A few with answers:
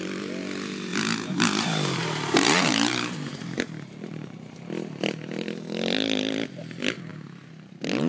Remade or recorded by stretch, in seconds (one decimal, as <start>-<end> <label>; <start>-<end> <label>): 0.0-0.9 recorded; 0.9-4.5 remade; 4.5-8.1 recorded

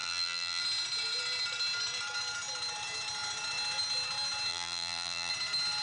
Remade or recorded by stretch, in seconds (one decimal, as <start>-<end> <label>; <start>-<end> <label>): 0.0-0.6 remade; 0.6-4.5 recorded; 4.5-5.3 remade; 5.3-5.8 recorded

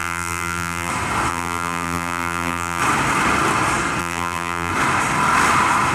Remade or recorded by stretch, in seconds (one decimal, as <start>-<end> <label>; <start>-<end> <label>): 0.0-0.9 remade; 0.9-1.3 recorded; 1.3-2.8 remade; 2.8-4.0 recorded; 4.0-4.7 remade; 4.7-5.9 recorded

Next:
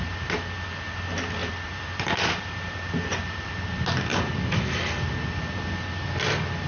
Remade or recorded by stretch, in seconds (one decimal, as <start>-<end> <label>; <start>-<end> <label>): 0.0-1.4 recorded; 1.4-3.5 remade; 3.5-6.7 recorded